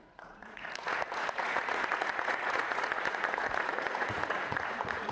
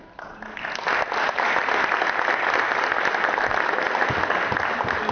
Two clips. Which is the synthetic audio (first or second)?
first